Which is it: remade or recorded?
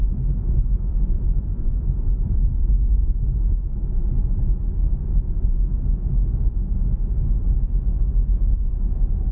recorded